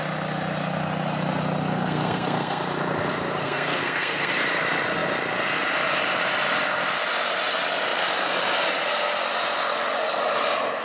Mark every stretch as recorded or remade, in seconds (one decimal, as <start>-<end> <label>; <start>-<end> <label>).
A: 0.0-1.7 recorded; 1.7-2.6 remade; 2.6-3.4 recorded; 3.4-4.3 remade; 4.3-10.8 recorded